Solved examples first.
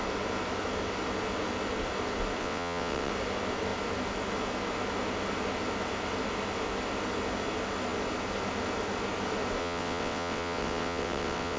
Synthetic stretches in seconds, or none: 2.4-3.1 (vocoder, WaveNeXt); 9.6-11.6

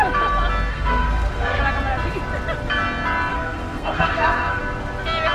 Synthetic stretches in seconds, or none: 0.7-1.6 (codec, SNAC); 3.3-4.6